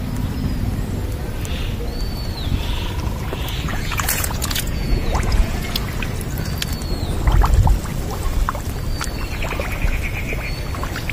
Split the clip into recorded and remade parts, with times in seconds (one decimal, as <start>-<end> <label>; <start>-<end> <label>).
0.0-3.7 recorded; 3.7-5.8 remade; 5.8-11.1 recorded